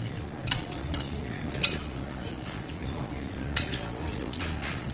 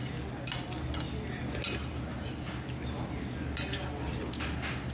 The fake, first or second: first